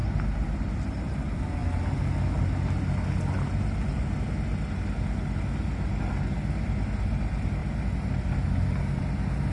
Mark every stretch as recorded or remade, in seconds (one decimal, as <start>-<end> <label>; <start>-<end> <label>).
0.0-9.5 recorded